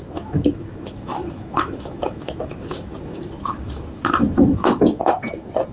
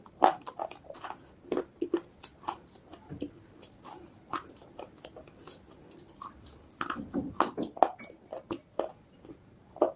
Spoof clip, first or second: first